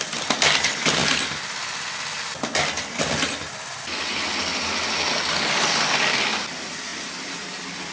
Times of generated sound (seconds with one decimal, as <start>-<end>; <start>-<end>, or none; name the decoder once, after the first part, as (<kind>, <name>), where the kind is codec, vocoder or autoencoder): none